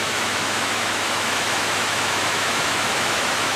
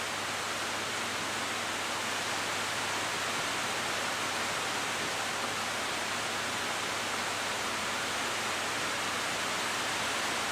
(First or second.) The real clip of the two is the second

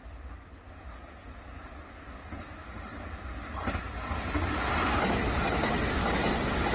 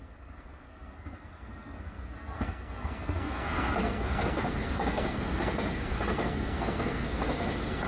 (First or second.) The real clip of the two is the first